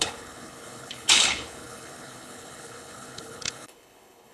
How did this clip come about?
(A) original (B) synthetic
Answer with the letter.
B